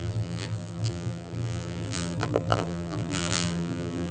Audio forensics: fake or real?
fake